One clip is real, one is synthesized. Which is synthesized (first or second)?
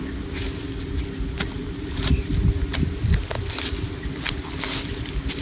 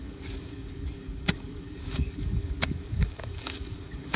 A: second